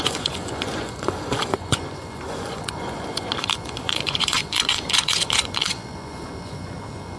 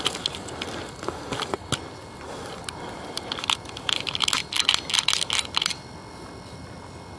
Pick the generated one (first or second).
first